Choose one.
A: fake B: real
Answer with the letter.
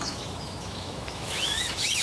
A